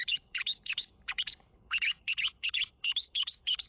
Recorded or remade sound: remade